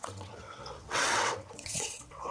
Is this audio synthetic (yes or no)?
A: yes